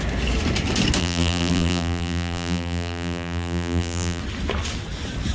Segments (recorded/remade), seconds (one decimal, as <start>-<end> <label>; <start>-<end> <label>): 0.0-1.0 recorded; 1.0-4.2 remade; 4.2-5.3 recorded